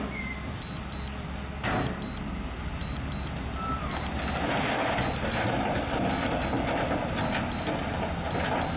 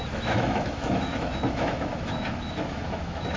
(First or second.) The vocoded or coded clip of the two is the second